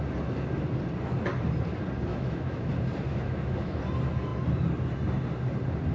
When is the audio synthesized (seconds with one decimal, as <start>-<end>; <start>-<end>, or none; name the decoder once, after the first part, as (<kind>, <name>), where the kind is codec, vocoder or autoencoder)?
2.1-2.7 (autoencoder, DAC-VAE); 3.1-3.8